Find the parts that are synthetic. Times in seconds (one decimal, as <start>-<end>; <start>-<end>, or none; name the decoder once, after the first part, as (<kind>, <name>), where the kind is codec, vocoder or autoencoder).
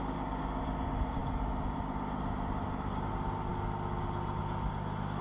none